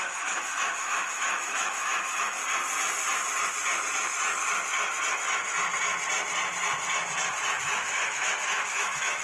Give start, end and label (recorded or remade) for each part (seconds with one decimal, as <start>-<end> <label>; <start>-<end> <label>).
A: 0.0-2.4 remade; 2.4-7.6 recorded; 7.6-9.2 remade